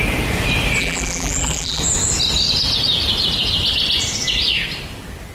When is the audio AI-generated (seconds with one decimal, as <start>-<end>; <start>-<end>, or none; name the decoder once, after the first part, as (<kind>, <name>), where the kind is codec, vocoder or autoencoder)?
0.8-1.8 (vocoder, BigVGAN v2)